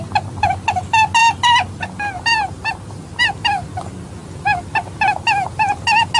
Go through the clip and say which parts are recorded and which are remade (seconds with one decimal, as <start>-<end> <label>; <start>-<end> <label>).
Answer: 0.0-6.2 recorded